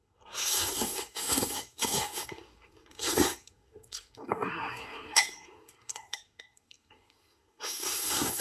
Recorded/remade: remade